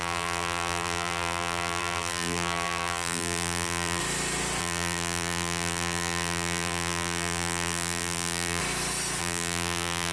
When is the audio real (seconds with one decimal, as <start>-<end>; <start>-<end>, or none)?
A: 4.0-4.6; 8.6-9.2